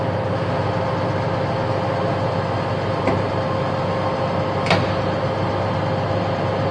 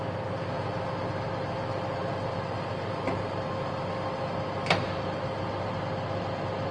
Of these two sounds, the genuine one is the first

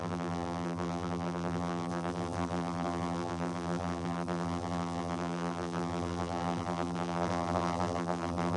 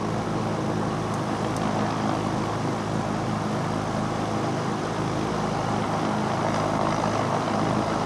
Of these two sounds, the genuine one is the second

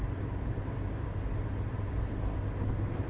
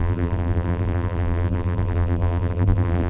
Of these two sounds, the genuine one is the first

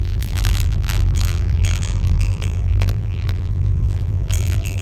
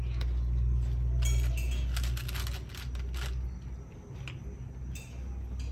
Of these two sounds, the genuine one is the second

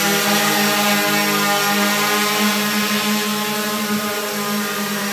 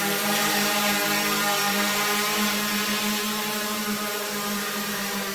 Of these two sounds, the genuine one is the first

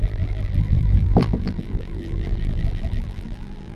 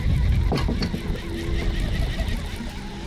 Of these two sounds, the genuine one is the second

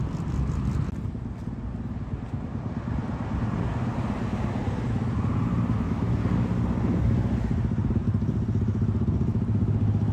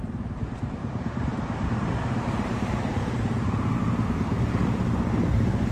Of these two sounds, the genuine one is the first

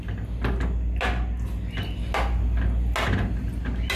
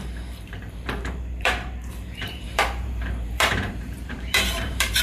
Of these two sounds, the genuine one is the first